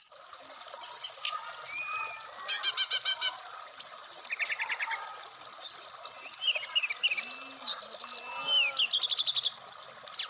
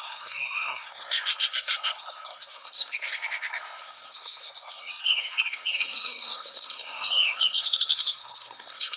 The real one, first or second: first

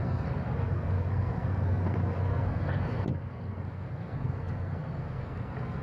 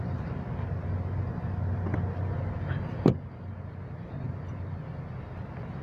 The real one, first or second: second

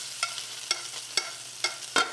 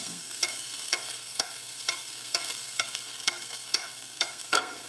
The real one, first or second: first